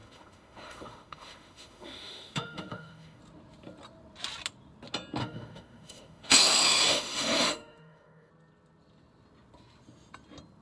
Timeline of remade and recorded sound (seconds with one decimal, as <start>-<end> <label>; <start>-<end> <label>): 0.0-3.2 remade; 3.2-5.2 recorded; 5.2-8.3 remade; 8.3-10.6 recorded